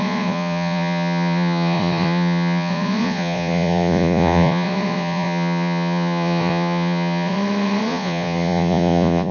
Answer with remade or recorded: remade